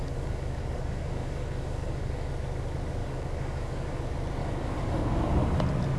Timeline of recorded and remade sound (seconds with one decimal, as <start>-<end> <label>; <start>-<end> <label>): 0.0-2.3 remade; 2.3-3.0 recorded; 3.0-4.0 remade; 4.0-4.4 recorded; 4.4-5.6 remade; 5.6-6.0 recorded